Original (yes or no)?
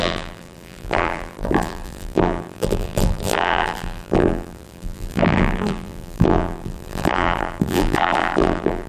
no